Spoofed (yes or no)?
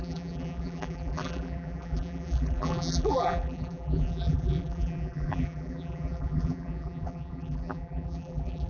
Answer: yes